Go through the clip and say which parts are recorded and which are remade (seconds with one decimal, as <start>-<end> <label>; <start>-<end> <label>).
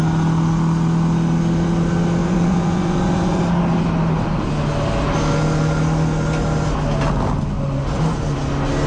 0.0-2.2 recorded; 2.2-3.4 remade; 3.4-8.9 recorded